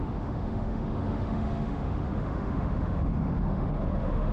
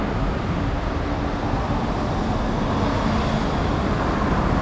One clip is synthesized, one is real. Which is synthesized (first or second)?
first